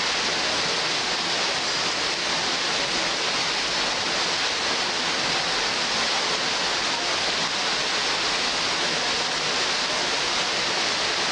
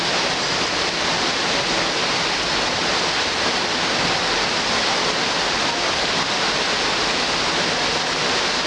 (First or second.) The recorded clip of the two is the first